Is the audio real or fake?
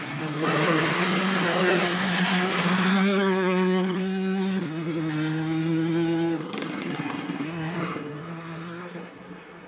fake